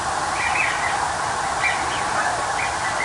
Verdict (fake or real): real